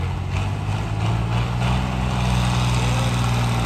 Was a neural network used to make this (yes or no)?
no